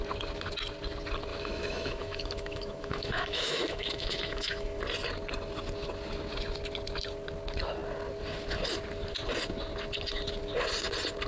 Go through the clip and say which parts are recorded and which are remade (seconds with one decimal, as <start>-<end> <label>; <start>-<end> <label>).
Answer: 0.0-1.3 recorded; 1.3-4.8 remade; 4.8-11.3 recorded